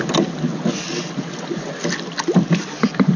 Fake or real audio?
real